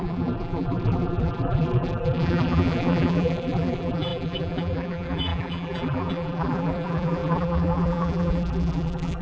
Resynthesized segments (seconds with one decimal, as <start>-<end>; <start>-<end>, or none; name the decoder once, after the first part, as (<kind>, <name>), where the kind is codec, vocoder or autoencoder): 0.0-9.2 (vocoder, BigVGAN v2)